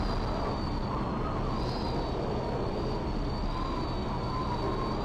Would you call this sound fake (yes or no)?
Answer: no